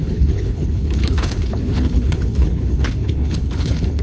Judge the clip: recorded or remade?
remade